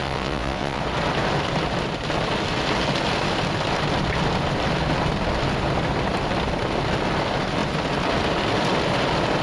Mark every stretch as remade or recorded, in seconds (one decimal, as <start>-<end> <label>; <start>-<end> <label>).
0.0-0.8 remade; 0.8-9.4 recorded